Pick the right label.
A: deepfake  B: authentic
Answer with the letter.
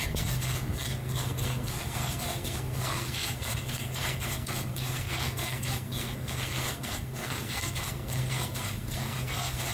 A